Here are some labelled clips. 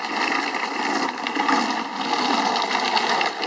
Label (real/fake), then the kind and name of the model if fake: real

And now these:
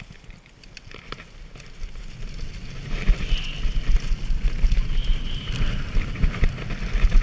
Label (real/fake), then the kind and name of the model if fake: real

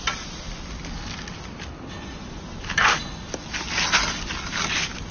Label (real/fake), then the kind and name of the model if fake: real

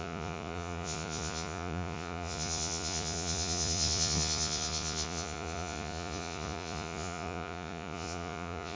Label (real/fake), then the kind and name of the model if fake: fake, vocoder, Vocos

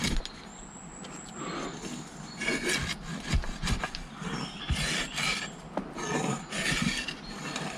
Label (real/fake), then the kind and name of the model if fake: real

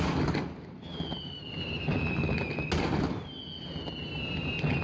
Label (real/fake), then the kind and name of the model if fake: real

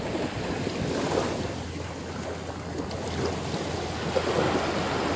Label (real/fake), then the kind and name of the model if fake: real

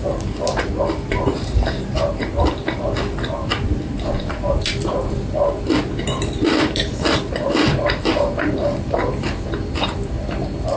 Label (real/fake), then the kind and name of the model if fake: fake, vocoder, BigVGAN v2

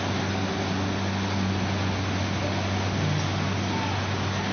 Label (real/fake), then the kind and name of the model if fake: real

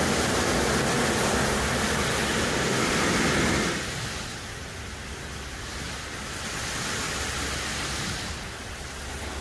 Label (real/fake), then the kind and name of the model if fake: real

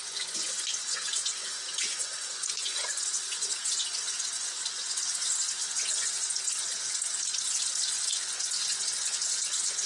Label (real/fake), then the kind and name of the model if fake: fake, vocoder, Vocos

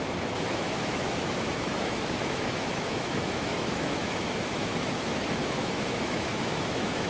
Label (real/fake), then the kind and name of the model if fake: fake, autoencoder, DAC-VAE